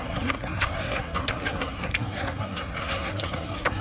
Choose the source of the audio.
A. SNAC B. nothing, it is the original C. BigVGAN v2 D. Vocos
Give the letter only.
A